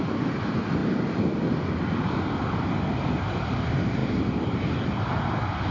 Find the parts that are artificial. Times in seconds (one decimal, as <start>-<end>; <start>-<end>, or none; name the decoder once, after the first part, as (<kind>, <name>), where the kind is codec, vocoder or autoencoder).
none